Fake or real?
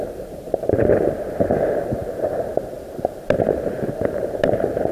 fake